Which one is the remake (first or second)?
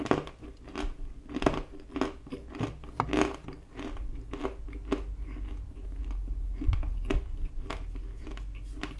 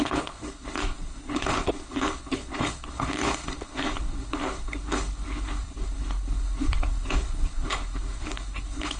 second